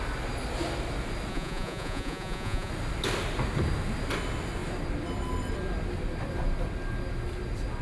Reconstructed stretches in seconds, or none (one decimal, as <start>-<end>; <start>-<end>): 1.3-2.7